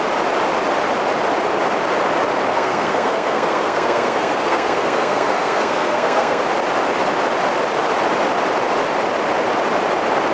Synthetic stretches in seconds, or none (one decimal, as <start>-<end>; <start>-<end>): 2.5-6.4